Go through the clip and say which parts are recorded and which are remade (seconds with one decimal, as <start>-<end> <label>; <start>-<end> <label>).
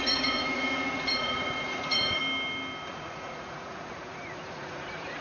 0.0-2.2 remade; 2.2-2.9 recorded; 2.9-5.2 remade